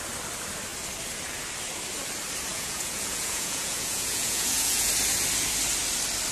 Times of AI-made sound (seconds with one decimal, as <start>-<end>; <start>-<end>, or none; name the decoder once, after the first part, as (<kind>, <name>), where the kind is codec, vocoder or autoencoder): 2.5-4.9 (vocoder, Vocos)

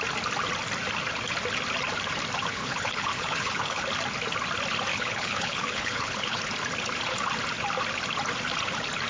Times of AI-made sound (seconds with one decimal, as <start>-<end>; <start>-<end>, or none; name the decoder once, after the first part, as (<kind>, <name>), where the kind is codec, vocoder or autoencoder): 2.5-3.8 (codec, HILCodec); 4.9-6.4

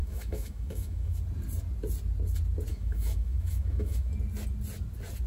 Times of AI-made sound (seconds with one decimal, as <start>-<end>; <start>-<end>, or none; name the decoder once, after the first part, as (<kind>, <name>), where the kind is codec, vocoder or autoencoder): 0.0-1.2 (autoencoder, DAC-VAE); 2.7-4.1